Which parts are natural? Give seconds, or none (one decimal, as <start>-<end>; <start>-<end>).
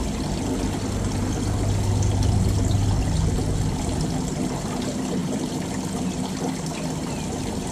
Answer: 0.0-7.7